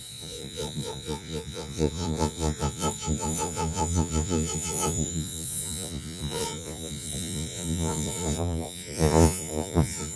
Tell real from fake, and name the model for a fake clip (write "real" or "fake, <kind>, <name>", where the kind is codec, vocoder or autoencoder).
fake, vocoder, Vocos